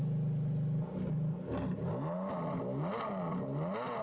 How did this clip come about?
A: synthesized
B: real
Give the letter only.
B